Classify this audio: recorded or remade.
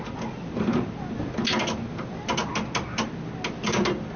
recorded